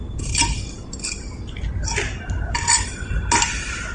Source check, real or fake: real